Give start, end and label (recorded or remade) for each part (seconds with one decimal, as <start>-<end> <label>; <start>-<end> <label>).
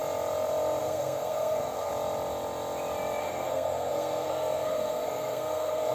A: 0.0-0.8 recorded; 0.8-1.9 remade; 1.9-3.2 recorded; 3.2-5.9 remade